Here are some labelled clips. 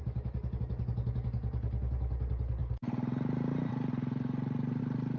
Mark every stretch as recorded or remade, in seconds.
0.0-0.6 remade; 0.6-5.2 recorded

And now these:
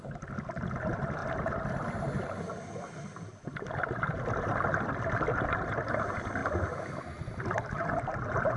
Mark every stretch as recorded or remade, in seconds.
0.0-8.6 recorded

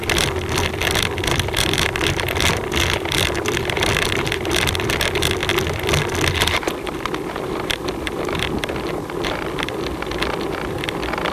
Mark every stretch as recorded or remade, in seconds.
0.0-5.4 remade; 5.4-7.0 recorded; 7.0-11.3 remade

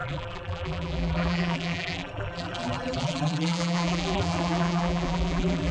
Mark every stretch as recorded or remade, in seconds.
0.0-5.7 remade

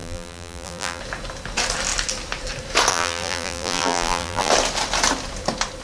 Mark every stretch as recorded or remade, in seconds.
0.0-1.0 remade; 1.0-2.9 recorded; 2.9-4.5 remade; 4.5-5.8 recorded

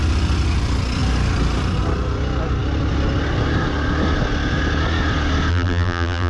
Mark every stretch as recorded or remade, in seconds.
0.0-5.5 recorded; 5.5-6.3 remade

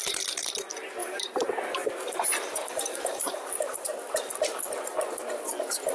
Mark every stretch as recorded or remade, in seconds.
0.0-1.0 recorded; 1.0-3.9 remade; 3.9-5.9 recorded